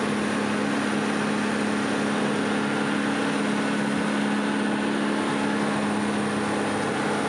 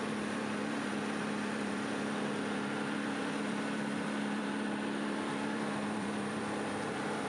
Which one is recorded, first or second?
first